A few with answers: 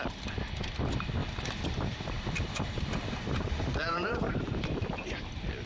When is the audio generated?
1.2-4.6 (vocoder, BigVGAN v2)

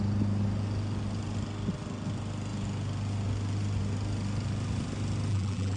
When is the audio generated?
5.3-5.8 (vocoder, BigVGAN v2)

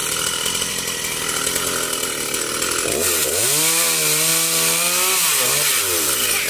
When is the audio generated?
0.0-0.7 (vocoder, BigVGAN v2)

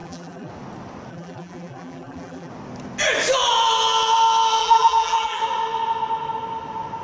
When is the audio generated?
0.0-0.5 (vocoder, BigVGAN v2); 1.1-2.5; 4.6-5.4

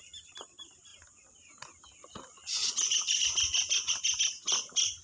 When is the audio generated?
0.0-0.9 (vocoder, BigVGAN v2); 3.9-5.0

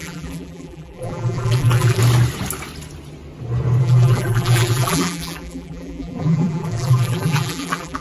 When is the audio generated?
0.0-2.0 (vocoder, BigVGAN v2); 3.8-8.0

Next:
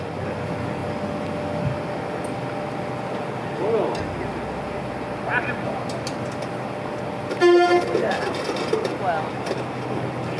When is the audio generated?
none